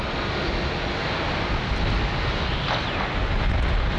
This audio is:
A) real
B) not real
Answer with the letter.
A